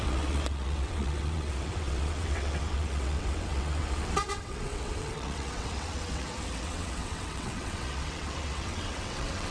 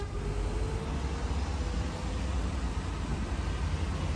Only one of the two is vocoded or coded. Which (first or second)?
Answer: first